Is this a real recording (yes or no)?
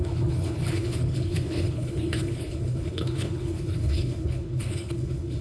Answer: no